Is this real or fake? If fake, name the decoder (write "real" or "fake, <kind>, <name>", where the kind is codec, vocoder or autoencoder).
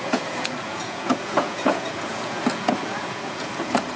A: fake, vocoder, Vocos